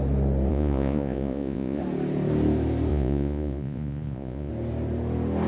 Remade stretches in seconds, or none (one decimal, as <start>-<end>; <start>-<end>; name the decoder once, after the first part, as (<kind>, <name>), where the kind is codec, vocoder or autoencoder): 0.5-1.8 (vocoder, Vocos); 2.9-4.5